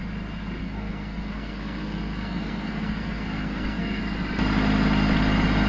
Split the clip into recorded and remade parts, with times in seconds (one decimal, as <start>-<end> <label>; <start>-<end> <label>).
0.0-0.6 recorded; 0.6-4.0 remade; 4.0-5.7 recorded

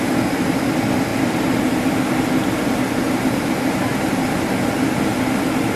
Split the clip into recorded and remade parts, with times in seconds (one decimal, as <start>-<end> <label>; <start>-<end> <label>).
0.0-5.8 recorded